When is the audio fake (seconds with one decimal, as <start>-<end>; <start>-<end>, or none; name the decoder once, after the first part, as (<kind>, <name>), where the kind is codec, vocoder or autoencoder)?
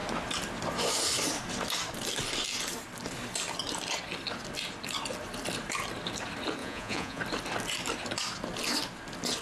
6.6-7.2 (vocoder, Vocos)